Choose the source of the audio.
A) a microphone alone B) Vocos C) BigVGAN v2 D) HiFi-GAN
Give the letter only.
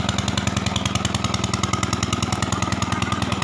A